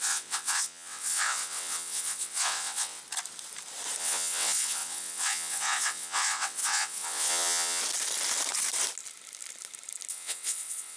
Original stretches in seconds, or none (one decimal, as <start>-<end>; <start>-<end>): 3.0-4.0; 7.8-10.1